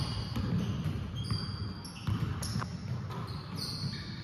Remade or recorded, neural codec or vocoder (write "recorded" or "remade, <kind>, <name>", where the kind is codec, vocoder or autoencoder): recorded